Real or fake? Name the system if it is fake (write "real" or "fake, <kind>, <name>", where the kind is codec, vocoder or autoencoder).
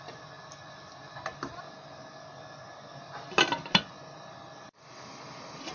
real